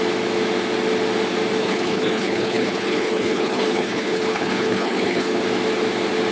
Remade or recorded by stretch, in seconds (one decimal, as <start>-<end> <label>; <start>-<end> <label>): 0.0-1.6 recorded; 1.6-5.4 remade; 5.4-6.3 recorded